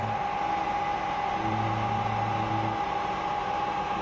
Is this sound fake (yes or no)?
no